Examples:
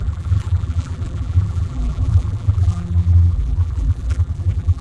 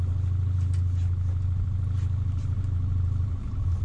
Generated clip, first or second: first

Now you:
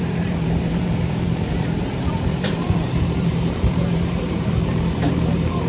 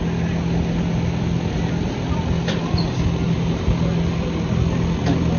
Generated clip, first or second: first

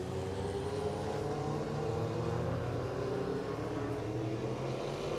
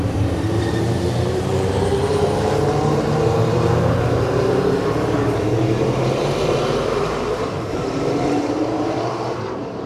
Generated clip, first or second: second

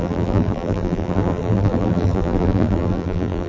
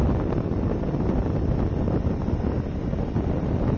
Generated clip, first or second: first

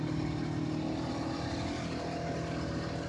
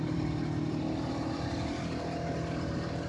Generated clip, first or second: second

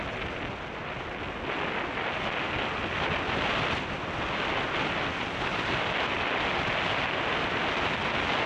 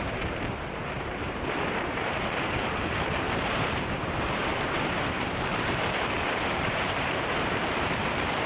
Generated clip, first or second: second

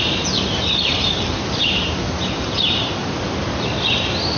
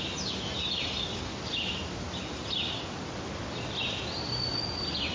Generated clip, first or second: first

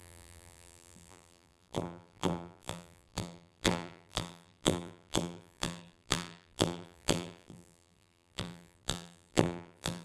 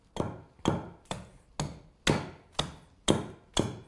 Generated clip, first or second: first